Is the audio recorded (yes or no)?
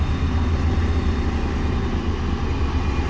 yes